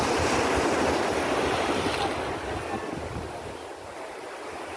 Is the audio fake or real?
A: real